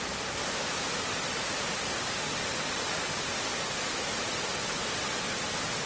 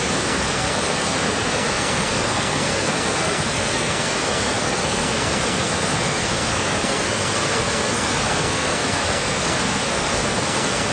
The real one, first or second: first